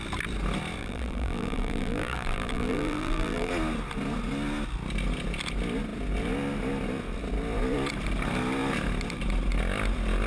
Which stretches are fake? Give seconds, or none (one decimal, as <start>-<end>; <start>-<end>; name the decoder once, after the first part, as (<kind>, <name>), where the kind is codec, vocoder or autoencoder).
0.8-3.5 (vocoder, BigVGAN v2)